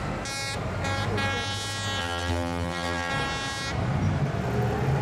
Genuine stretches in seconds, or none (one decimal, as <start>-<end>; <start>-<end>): 0.0-2.0; 3.1-5.0